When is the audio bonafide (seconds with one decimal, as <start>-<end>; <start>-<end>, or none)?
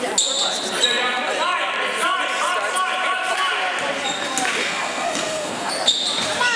0.0-4.6; 5.7-6.6